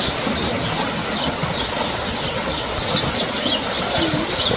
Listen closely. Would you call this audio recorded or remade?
recorded